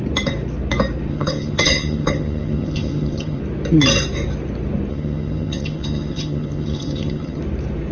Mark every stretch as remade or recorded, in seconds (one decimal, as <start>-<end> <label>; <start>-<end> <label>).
0.0-1.1 recorded; 1.1-3.4 remade; 3.4-4.9 recorded; 4.9-7.4 remade; 7.4-7.9 recorded